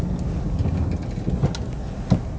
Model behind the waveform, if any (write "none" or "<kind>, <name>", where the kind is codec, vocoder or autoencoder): none